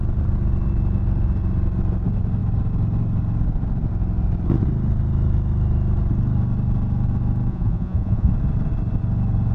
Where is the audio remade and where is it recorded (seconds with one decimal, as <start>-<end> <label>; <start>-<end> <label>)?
0.0-7.5 recorded; 7.5-8.3 remade; 8.3-9.5 recorded